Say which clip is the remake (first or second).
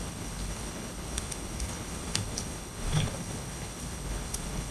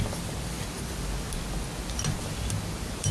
first